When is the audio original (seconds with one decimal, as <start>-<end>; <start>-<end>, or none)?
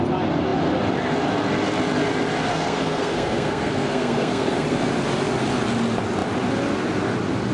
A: 0.0-2.5; 4.9-7.5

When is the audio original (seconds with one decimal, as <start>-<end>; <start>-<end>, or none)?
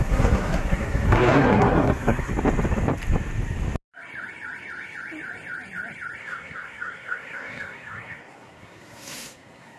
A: 2.3-6.2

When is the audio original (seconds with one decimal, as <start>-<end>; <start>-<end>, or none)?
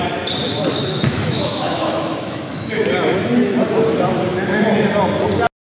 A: 0.0-0.8; 2.8-5.7